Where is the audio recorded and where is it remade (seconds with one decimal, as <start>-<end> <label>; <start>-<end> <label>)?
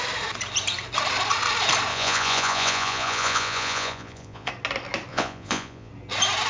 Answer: 0.0-1.9 recorded; 1.9-4.5 remade; 4.5-5.1 recorded; 5.1-5.9 remade; 5.9-6.5 recorded